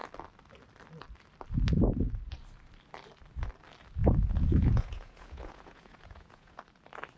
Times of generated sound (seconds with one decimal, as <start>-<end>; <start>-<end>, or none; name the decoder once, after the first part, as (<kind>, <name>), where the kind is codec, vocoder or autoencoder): 4.0-6.6 (vocoder, Vocos)